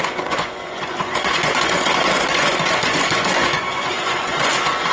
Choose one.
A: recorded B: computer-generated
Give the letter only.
B